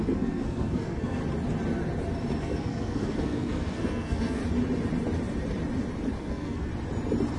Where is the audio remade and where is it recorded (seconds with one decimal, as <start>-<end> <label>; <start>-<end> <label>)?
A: 0.0-1.2 remade; 1.2-2.4 recorded; 2.4-4.4 remade; 4.4-6.2 recorded; 6.2-6.7 remade; 6.7-7.4 recorded